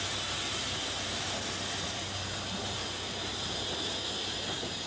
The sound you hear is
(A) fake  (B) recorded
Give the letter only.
B